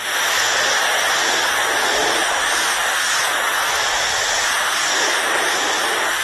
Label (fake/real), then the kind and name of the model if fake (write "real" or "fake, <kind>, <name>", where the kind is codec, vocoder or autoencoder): real